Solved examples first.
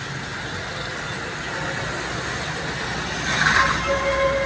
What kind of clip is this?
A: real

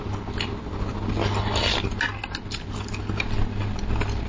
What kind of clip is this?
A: real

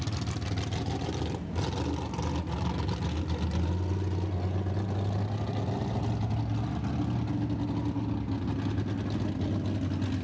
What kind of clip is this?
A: real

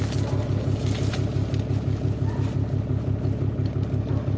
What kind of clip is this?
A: real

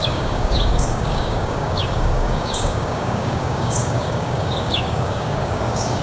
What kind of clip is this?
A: fake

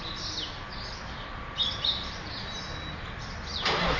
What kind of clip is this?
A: real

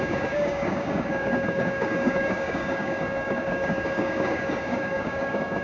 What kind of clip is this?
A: fake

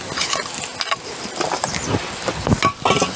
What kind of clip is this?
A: real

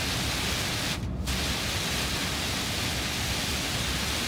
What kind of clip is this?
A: real